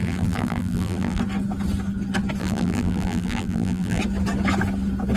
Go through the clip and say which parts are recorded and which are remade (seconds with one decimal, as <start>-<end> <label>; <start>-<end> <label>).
0.0-1.2 remade; 1.2-2.4 recorded; 2.4-4.0 remade; 4.0-5.2 recorded